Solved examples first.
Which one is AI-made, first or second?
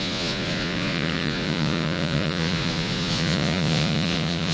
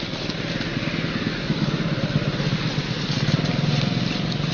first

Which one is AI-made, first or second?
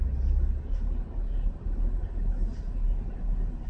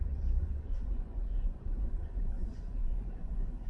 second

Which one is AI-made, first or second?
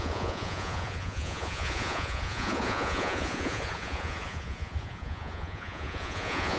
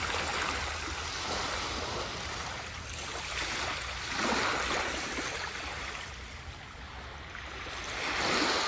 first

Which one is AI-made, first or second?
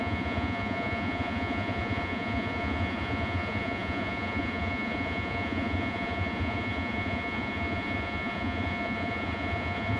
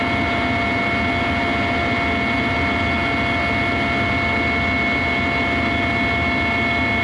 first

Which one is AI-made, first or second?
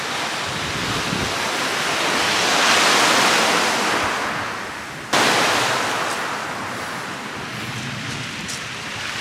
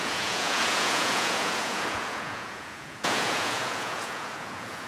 second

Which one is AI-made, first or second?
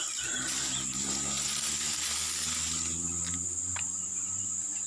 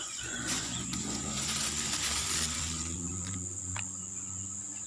second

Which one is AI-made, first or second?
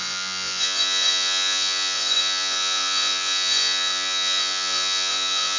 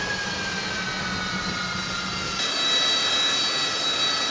first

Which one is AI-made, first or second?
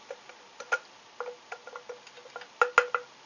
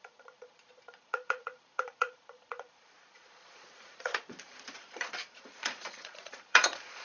second